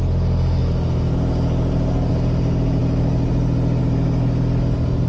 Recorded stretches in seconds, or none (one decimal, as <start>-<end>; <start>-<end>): 0.0-5.1